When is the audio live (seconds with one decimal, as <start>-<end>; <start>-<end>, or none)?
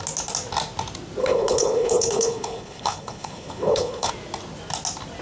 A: 0.0-1.2; 4.1-5.2